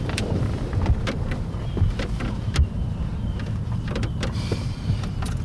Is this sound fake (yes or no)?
yes